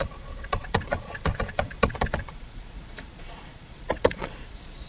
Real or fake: fake